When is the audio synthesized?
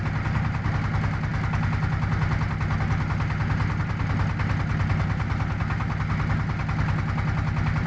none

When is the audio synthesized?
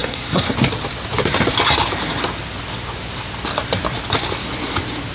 0.0-0.5 (codec, SNAC)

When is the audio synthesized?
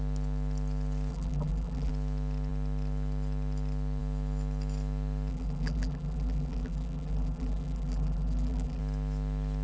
1.1-1.9 (vocoder, BigVGAN v2); 5.3-8.8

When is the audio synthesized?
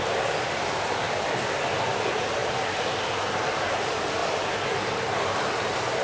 none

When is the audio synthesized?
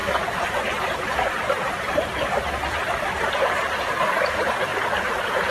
1.0-2.3 (vocoder, BigVGAN v2); 3.0-5.5